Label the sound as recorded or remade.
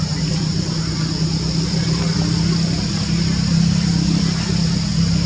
recorded